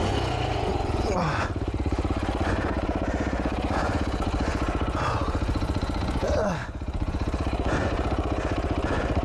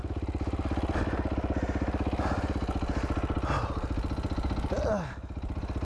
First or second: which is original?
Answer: second